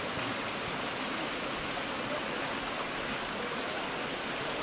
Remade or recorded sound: recorded